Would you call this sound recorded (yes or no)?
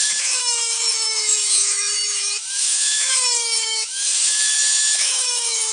no